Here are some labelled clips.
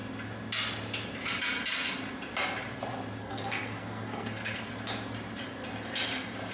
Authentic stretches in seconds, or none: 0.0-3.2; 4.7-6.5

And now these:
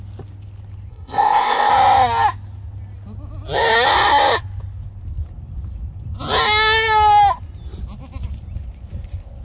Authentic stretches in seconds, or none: 0.0-0.9; 1.7-9.4

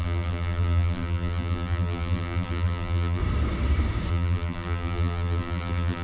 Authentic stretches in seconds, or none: 3.2-4.1